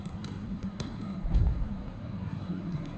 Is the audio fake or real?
fake